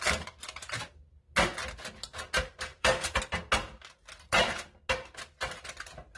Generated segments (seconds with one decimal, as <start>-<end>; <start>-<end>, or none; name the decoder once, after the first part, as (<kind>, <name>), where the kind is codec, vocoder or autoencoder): 2.7-3.2 (vocoder, BigVGAN v2)